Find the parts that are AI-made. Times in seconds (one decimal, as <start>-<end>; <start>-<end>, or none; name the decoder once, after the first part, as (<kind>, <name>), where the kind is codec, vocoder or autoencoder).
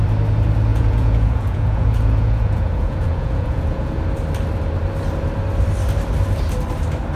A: 0.7-4.0 (vocoder, Vocos)